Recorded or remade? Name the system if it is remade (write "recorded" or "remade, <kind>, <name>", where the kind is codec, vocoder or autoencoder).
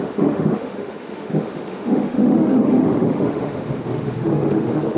remade, autoencoder, DAC-VAE